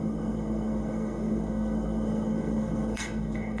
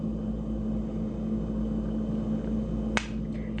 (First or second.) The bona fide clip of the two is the second